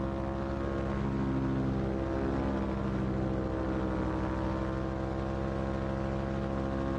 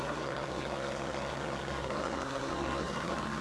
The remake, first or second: second